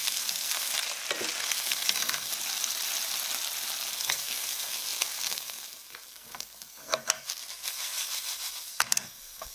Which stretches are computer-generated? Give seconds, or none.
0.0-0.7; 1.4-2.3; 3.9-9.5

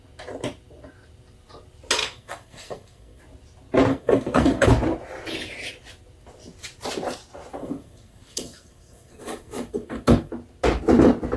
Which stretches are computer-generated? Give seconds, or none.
2.0-3.2; 3.9-4.7; 7.6-10.3

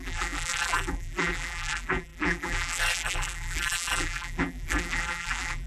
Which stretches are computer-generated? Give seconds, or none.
0.0-5.7

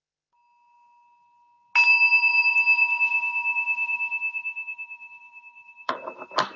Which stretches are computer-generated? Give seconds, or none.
1.9-5.9

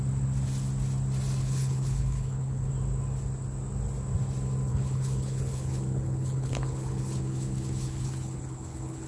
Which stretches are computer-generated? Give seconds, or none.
1.4-2.7; 4.7-9.1